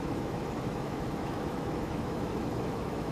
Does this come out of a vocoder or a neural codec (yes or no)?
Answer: yes